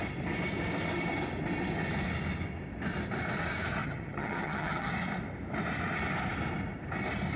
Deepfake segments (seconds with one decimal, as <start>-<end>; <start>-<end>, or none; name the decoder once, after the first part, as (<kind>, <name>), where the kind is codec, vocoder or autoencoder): 3.8-4.9 (vocoder, HiFi-GAN)